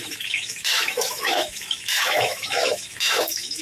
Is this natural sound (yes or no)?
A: no